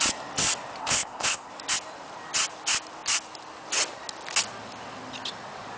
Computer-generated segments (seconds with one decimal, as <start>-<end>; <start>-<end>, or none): 0.8-1.5